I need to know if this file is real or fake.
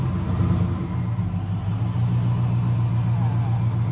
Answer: real